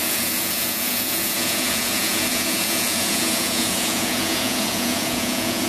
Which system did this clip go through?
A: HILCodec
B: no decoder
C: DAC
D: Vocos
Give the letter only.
D